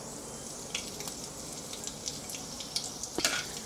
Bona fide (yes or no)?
yes